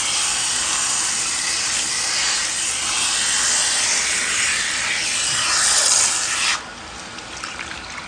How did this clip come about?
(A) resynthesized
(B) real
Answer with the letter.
B